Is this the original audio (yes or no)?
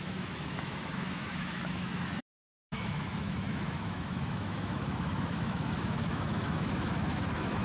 no